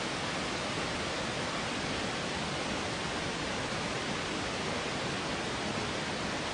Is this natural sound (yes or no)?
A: yes